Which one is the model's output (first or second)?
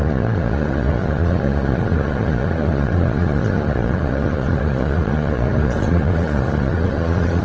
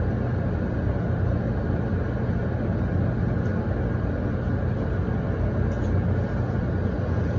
first